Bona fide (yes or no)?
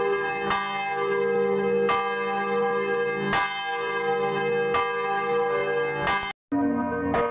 yes